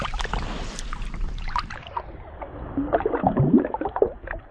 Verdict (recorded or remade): recorded